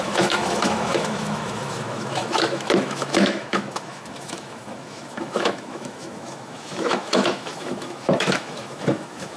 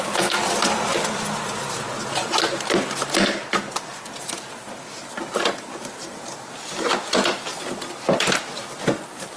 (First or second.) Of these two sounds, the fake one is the first